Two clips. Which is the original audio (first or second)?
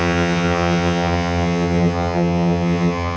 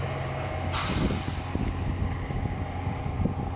second